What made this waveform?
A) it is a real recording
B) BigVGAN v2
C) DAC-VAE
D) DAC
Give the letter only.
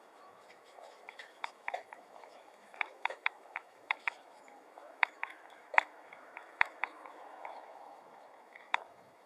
C